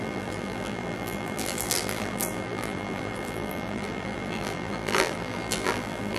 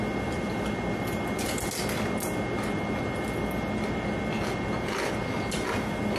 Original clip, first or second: second